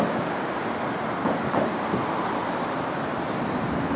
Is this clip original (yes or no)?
yes